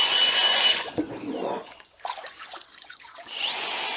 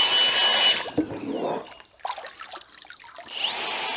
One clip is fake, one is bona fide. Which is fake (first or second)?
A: first